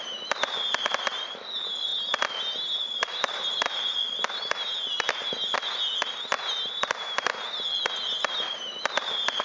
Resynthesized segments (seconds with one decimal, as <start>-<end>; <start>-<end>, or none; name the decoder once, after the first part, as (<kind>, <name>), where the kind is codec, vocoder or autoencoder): none